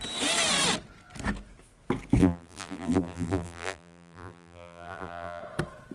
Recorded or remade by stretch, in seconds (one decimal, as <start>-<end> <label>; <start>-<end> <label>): 0.0-2.2 recorded; 2.2-5.4 remade; 5.4-5.9 recorded